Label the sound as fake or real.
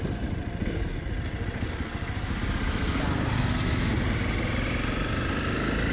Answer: real